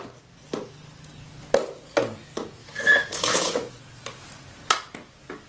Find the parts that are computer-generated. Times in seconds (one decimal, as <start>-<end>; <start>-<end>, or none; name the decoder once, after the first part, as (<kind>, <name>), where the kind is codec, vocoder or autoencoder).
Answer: 2.6-3.7 (autoencoder, DAC-VAE)